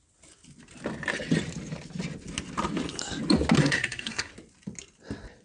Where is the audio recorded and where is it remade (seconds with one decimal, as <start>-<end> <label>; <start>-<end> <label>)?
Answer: 0.0-3.6 recorded; 3.6-4.3 remade; 4.3-5.4 recorded